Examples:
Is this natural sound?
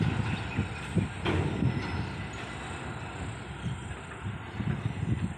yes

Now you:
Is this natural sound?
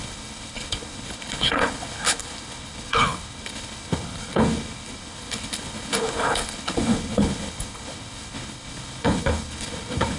no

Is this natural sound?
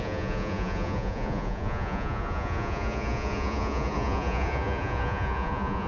no